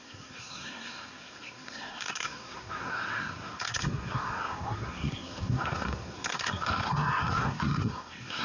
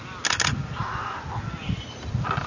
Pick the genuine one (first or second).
second